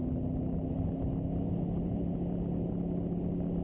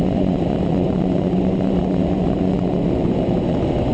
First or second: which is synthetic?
second